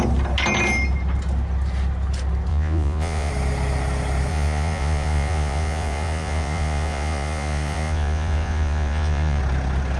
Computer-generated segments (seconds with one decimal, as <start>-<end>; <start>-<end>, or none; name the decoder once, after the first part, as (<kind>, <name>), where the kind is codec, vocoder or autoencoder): 2.5-3.3 (vocoder, Vocos); 4.3-9.4